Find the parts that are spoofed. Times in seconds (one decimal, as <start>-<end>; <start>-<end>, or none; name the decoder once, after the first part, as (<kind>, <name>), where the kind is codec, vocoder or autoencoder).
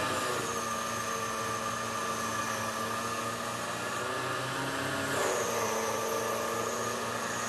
none